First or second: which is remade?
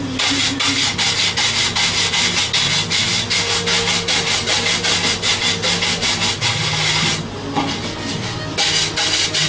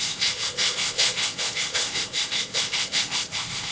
second